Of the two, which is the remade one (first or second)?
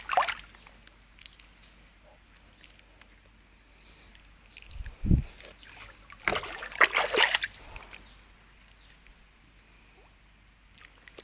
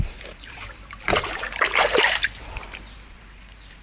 second